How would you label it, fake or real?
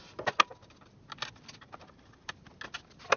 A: real